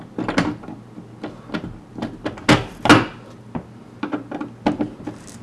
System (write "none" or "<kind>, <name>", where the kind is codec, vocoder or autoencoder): none